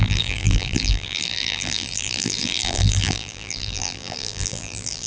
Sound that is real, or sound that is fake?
fake